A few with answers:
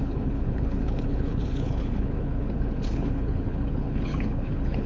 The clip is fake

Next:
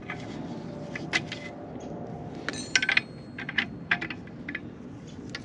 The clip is real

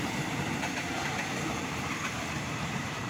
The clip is fake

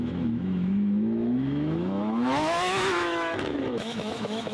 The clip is fake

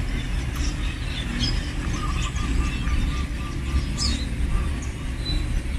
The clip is real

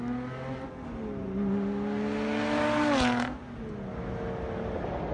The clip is real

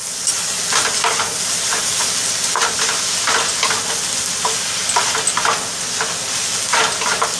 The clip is real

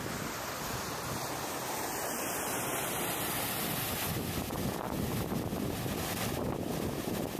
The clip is real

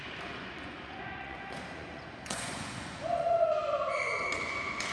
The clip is fake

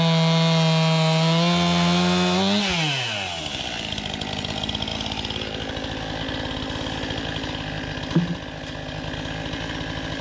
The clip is real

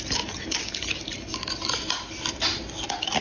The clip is real